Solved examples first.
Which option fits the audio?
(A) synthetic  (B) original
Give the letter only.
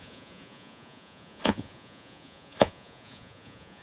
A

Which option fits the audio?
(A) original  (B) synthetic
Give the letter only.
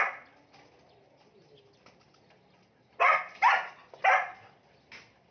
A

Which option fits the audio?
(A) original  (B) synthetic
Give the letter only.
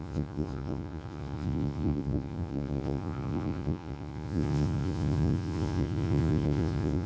B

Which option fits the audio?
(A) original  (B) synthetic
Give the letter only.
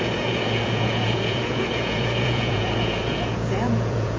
B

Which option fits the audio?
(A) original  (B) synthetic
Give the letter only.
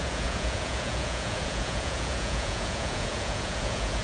B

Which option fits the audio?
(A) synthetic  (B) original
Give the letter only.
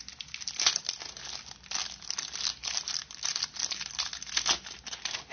B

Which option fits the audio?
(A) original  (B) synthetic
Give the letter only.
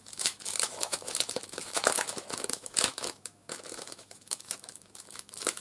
B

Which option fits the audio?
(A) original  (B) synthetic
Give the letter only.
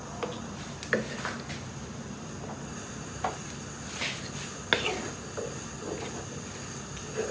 A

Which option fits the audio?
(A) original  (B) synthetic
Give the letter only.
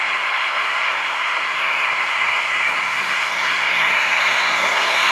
B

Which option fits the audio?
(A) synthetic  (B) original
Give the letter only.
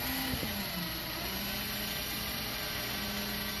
B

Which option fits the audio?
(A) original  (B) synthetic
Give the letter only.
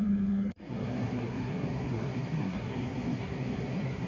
B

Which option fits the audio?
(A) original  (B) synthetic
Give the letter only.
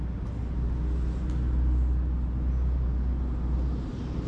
A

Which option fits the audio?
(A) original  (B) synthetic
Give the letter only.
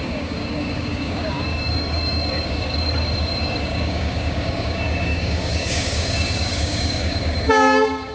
B